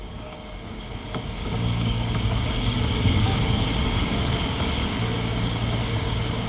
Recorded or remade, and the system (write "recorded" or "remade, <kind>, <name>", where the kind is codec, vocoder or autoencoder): remade, codec, DAC